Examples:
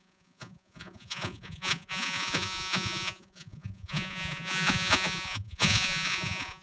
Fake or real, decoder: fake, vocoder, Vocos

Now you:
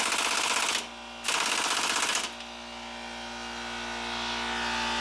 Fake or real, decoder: real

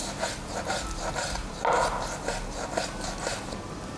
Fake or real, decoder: real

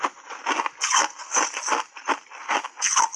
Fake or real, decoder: real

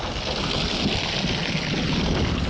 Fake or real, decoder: real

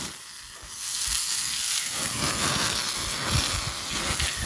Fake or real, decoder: real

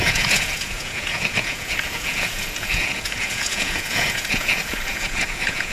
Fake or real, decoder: fake, vocoder, Vocos